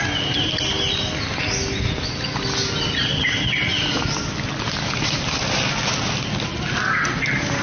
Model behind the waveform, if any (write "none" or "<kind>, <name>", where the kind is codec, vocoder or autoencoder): none